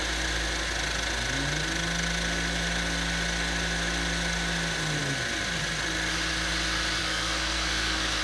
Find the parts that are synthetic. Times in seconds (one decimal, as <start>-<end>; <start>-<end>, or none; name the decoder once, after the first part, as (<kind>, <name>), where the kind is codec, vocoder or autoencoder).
7.0-8.2 (codec, SNAC)